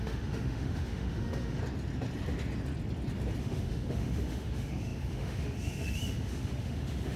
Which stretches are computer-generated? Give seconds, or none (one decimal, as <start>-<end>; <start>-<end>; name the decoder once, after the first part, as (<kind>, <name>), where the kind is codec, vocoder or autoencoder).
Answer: 0.0-1.6 (autoencoder, DAC-VAE); 3.4-7.2